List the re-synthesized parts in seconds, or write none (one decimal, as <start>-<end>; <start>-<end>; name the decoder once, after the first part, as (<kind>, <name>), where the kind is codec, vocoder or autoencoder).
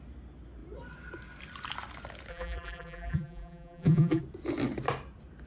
2.3-4.2 (vocoder, BigVGAN v2)